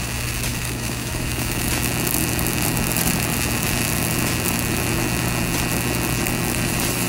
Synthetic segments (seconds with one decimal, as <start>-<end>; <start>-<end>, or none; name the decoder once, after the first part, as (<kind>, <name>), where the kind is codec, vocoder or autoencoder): 0.5-1.7 (autoencoder, DAC-VAE)